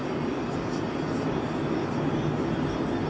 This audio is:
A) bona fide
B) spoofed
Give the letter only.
A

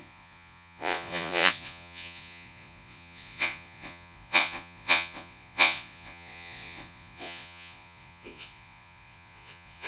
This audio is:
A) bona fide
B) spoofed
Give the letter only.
B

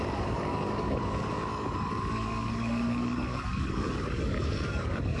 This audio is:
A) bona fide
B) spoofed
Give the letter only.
B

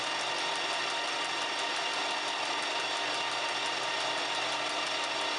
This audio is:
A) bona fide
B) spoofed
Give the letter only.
A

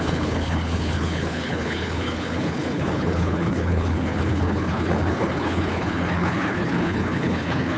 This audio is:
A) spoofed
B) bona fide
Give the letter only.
A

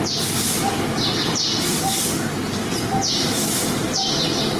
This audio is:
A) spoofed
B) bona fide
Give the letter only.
B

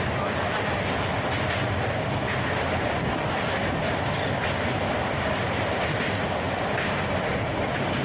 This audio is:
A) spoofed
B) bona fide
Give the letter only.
B